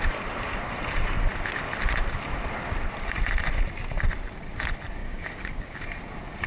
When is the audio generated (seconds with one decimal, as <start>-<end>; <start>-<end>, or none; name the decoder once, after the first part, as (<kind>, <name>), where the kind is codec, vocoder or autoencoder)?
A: 5.0-5.8 (codec, DAC)